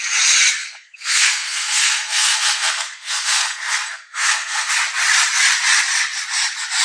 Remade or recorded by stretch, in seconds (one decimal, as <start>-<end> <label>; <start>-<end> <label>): 0.0-0.6 recorded; 0.6-4.7 remade; 4.7-6.8 recorded